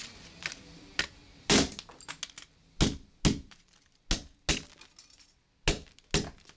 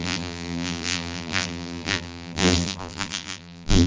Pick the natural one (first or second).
first